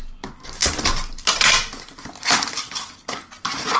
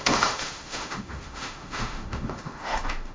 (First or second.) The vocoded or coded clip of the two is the second